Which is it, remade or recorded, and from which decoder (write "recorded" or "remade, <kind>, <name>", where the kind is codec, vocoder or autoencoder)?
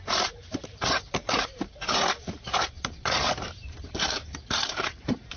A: remade, vocoder, BigVGAN v2